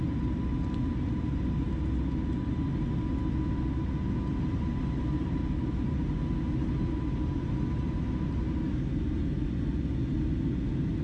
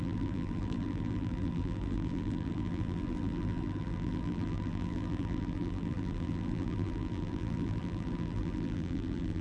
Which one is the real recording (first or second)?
first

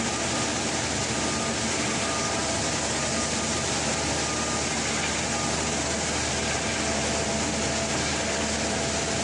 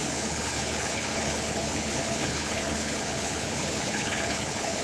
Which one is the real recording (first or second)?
first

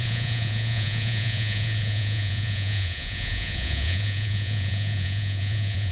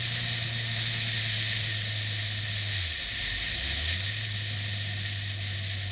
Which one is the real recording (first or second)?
second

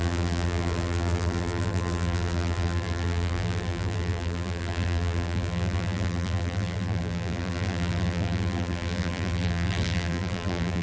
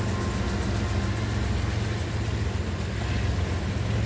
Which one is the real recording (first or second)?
second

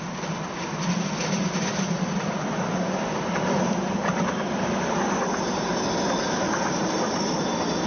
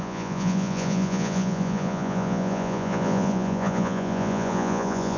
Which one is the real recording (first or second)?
first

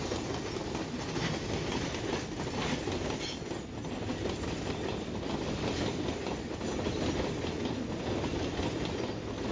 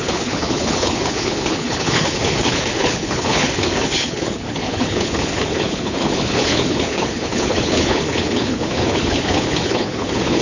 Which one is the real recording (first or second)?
first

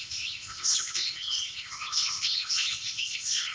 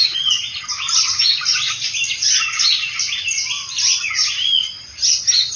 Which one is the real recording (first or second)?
second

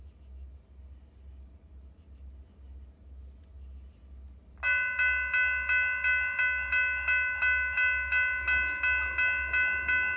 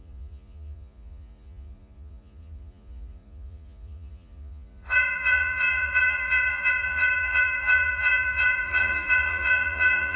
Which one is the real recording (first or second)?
first